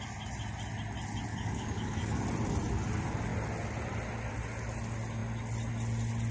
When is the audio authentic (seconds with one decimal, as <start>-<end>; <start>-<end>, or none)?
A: 0.0-1.3; 2.2-6.3